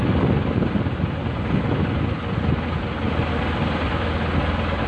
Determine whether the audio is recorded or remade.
recorded